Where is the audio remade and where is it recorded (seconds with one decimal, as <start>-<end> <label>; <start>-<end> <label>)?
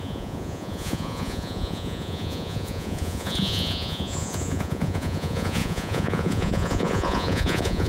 0.0-7.9 remade